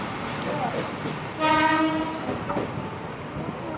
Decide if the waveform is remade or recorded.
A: recorded